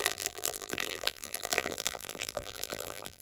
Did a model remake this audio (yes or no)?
yes